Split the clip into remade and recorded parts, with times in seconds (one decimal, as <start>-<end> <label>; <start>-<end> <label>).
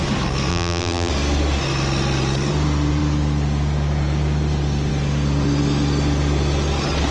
0.0-0.5 recorded; 0.5-1.1 remade; 1.1-7.1 recorded